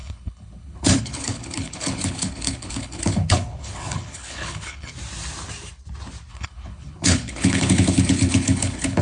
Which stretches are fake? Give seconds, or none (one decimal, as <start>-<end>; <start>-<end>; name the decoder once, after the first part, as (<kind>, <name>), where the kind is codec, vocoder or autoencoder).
0.0-4.9 (codec, HILCodec); 6.3-9.0